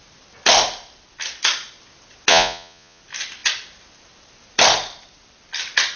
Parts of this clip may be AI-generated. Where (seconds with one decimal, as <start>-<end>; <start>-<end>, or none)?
2.3-3.0